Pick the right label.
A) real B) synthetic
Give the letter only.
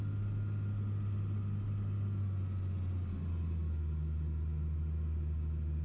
A